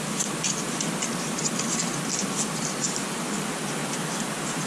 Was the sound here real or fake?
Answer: real